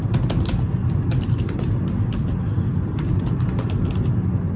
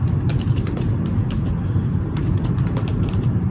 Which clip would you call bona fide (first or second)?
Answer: first